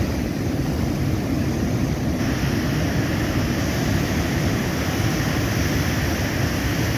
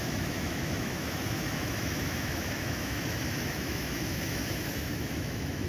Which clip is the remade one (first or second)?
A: second